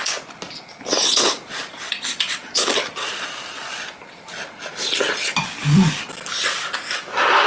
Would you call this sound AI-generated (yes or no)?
no